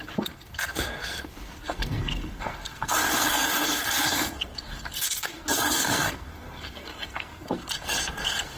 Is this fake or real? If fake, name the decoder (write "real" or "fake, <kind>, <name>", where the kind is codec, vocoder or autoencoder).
fake, codec, SNAC